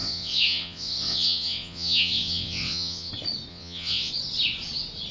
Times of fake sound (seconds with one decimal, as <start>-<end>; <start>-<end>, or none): 0.0-3.1; 3.5-4.1